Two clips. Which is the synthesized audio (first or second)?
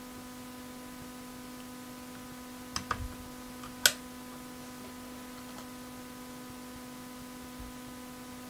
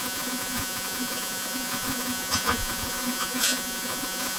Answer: second